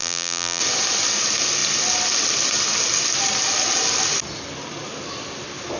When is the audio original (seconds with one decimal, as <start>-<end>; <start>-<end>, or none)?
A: 0.6-5.8

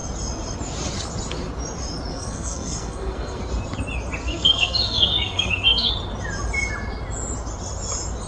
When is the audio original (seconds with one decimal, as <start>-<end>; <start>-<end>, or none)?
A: 0.0-2.1; 3.4-4.2; 5.9-8.3

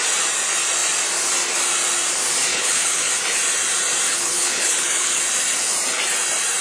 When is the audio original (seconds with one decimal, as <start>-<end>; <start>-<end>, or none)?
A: 0.0-2.5; 3.1-4.1; 5.2-6.6

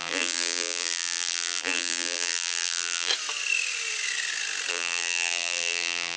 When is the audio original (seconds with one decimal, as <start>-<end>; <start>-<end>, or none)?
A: 3.1-4.7

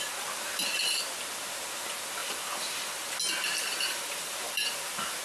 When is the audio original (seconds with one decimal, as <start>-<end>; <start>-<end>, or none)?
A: 0.0-2.2; 2.9-3.5

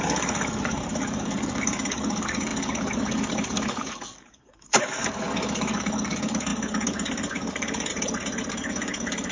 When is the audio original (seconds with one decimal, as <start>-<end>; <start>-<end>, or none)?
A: 7.9-8.5

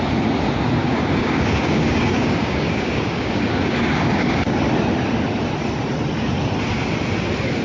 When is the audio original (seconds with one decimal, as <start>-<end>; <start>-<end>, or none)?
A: 0.0-0.8; 4.4-7.6

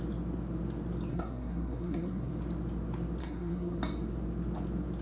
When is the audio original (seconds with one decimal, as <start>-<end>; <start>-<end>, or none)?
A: 0.0-1.1; 2.3-3.2; 3.8-5.0